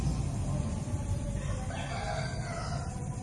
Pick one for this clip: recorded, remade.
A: recorded